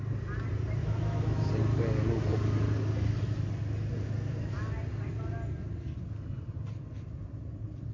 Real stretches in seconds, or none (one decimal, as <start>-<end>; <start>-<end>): 0.0-0.8; 1.5-7.9